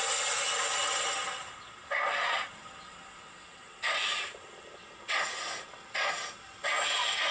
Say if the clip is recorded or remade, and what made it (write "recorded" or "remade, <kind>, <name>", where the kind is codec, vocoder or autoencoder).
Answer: recorded